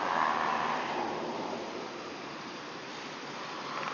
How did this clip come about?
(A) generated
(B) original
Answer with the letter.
B